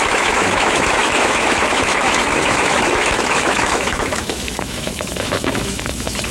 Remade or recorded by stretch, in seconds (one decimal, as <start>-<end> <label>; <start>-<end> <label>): 0.0-6.3 remade